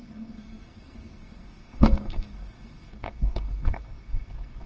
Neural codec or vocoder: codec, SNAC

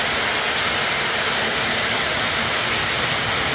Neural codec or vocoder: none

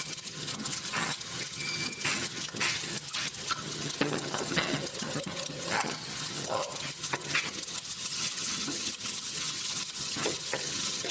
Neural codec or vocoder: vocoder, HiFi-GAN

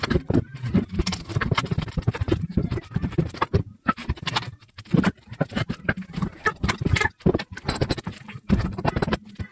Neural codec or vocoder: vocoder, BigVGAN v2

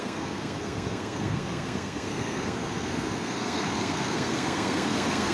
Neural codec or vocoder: codec, SNAC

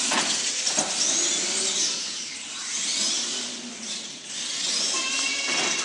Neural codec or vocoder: none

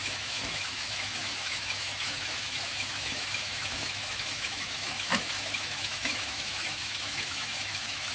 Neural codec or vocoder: autoencoder, DAC-VAE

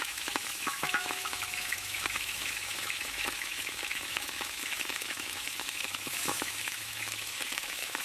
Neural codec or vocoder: autoencoder, DAC-VAE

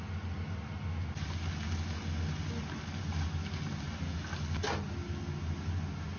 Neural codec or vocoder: none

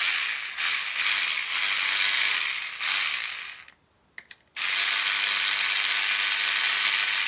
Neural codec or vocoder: none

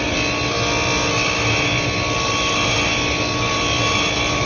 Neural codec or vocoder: none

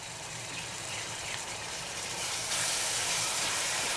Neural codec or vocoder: vocoder, BigVGAN v2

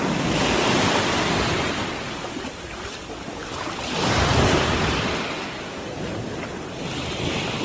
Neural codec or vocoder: none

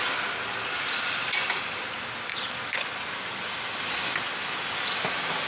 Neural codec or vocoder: none